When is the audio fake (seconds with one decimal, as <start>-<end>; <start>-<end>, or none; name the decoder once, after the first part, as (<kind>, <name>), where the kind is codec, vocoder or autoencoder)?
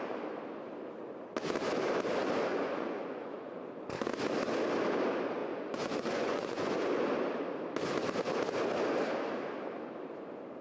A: 2.5-3.6 (vocoder, Vocos); 5.4-6.9